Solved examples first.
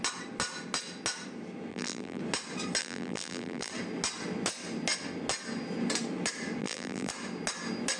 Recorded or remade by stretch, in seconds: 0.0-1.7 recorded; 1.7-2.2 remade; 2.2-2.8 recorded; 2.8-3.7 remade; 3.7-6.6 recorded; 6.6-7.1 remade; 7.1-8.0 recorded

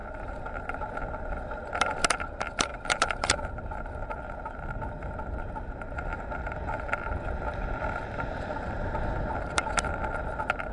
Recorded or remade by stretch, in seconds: 0.0-1.0 remade; 1.0-2.7 recorded; 2.7-3.5 remade; 3.5-10.7 recorded